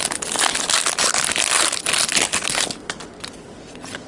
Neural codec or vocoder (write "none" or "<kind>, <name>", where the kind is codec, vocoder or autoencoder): none